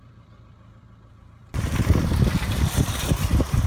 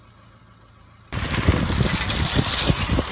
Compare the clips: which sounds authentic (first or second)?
second